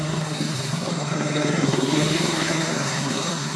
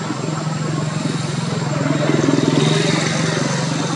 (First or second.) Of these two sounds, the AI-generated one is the first